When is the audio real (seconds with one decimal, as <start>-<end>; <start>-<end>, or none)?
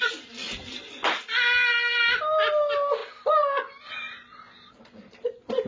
0.0-5.7